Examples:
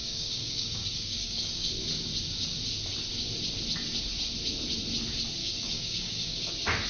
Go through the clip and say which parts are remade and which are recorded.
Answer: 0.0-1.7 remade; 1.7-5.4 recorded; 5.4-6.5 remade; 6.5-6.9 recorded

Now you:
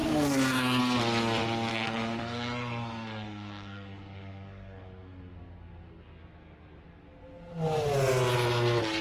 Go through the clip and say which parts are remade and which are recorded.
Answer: 0.0-0.8 remade; 0.8-1.7 recorded; 1.7-6.0 remade; 6.0-9.0 recorded

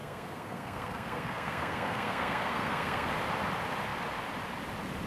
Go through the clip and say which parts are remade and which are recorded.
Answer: 0.0-3.1 remade; 3.1-5.1 recorded

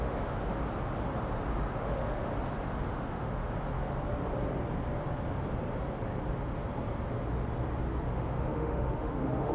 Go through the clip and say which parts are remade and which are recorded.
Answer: 0.0-0.5 remade; 0.5-1.8 recorded; 1.8-2.3 remade; 2.3-2.9 recorded; 2.9-3.4 remade; 3.4-8.1 recorded; 8.1-9.5 remade

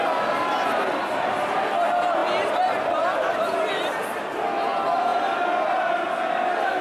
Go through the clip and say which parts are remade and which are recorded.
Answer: 0.0-6.8 recorded